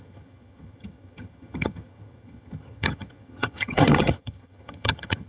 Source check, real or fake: fake